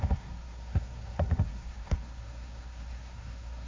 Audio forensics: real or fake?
fake